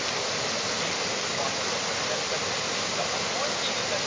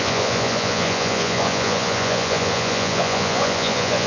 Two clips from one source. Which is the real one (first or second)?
first